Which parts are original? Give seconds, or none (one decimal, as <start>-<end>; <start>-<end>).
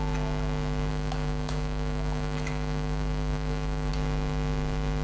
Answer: 0.0-0.9; 3.9-5.0